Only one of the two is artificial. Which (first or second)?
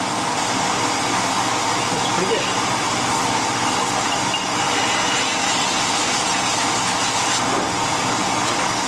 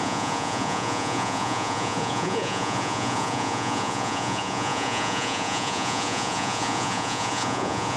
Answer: second